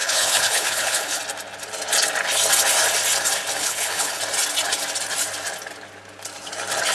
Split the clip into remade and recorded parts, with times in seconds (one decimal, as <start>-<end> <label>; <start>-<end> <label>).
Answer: 0.0-1.2 remade; 1.2-3.6 recorded; 3.6-4.2 remade; 4.2-6.9 recorded